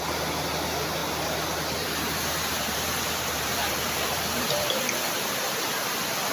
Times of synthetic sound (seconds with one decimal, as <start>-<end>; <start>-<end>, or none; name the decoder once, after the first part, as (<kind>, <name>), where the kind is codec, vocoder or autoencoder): 1.0-4.8 (vocoder, BigVGAN v2)